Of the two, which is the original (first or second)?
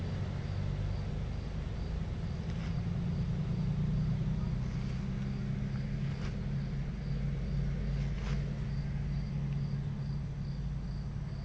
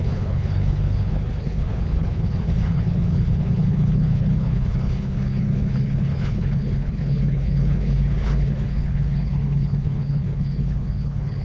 first